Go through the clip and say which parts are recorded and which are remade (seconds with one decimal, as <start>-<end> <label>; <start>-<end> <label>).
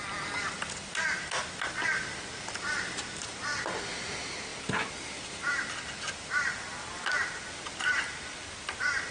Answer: 0.0-9.1 recorded